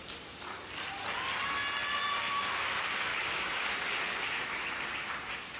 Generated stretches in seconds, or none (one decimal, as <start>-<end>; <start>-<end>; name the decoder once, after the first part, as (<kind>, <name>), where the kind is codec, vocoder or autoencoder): 3.1-3.8 (autoencoder, DAC-VAE)